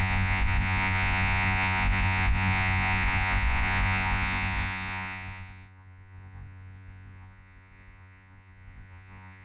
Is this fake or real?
fake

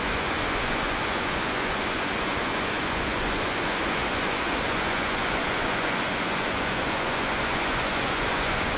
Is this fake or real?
fake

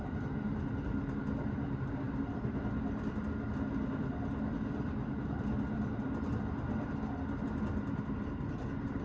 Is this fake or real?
real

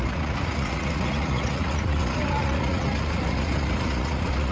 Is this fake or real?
fake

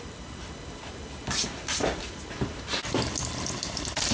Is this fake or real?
real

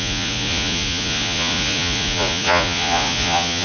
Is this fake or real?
fake